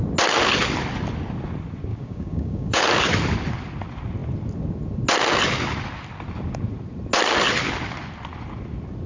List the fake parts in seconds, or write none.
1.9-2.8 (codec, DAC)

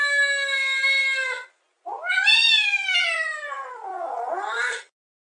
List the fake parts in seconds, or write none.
none